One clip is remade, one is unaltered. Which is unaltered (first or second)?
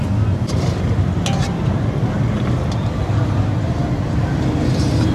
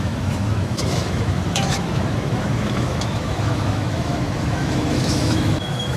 first